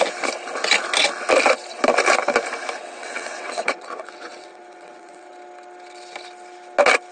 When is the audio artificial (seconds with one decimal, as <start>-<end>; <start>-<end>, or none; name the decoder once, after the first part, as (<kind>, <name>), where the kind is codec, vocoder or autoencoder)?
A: 2.8-5.3 (vocoder, WaveNeXt)